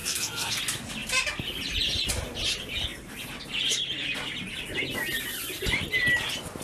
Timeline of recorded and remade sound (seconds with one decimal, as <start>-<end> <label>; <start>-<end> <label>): 0.0-0.6 remade; 0.6-6.6 recorded